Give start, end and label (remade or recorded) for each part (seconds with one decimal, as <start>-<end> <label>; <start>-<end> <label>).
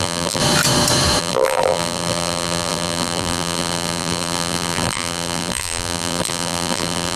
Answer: 0.0-0.4 remade; 0.4-1.2 recorded; 1.2-7.2 remade